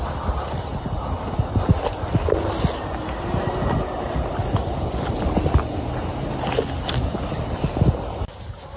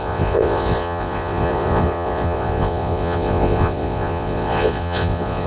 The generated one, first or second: second